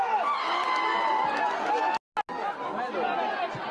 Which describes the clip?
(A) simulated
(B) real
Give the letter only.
B